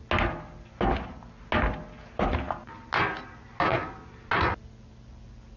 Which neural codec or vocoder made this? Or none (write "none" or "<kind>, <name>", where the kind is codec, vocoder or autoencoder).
none